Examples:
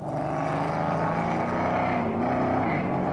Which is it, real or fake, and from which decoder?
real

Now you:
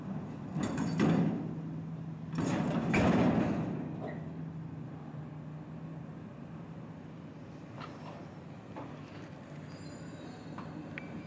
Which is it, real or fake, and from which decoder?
real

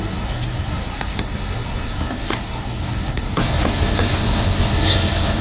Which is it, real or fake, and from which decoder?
fake, codec, SNAC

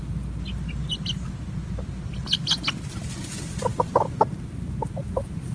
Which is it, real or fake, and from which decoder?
real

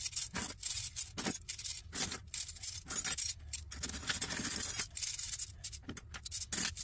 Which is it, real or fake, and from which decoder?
real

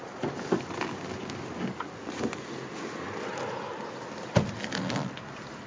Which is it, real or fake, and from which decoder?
real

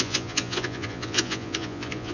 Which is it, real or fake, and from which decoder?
fake, vocoder, Vocos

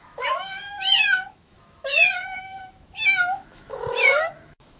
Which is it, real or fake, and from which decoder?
fake, autoencoder, DAC-VAE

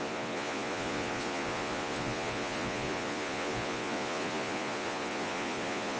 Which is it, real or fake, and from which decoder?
fake, vocoder, Vocos